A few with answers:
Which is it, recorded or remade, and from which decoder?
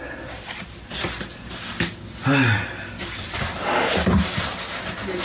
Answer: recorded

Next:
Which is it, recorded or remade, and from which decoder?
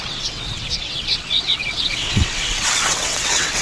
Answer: remade, vocoder, WaveNeXt